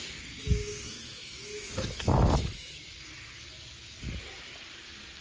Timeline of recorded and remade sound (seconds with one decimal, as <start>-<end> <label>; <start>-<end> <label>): 0.0-0.6 recorded; 0.6-2.8 remade; 2.8-5.2 recorded